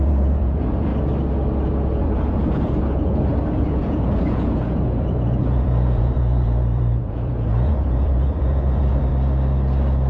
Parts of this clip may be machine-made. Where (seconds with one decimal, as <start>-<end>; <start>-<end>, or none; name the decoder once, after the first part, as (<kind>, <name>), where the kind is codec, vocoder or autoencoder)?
0.0-0.9 (vocoder, Vocos); 1.9-9.1